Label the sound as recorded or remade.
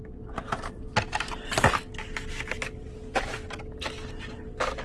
recorded